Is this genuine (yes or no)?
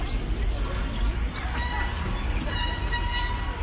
yes